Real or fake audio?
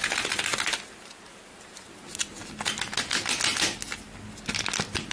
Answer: real